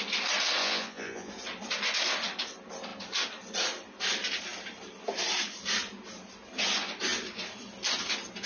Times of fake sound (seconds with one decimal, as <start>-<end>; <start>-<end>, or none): 0.6-1.3